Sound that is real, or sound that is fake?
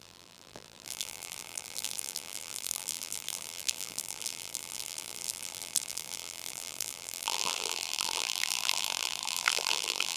fake